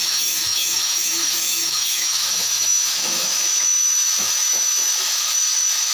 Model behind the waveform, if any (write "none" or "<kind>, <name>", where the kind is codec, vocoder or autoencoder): autoencoder, DAC-VAE